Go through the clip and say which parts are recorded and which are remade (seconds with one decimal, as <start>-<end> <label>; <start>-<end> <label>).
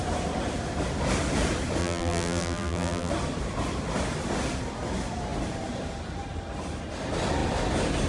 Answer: 0.0-1.8 recorded; 1.8-3.1 remade; 3.1-8.1 recorded